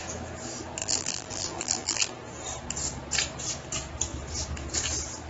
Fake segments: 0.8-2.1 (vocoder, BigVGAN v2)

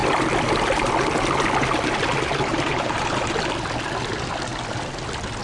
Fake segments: 2.5-3.3 (vocoder, BigVGAN v2)

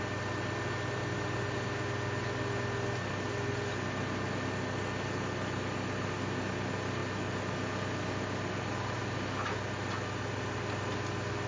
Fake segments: none

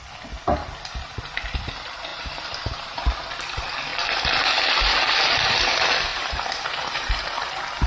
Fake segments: 2.1-3.0 (vocoder, BigVGAN v2); 6.1-7.5